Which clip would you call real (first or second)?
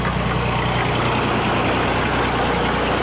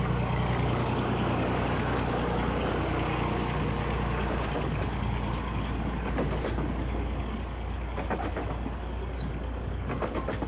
first